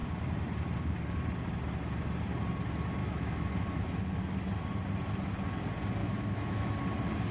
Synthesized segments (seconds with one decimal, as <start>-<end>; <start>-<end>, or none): 3.0-3.5; 6.0-6.7